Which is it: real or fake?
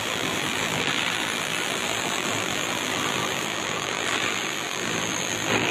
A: fake